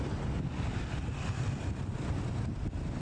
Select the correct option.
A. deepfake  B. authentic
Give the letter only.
B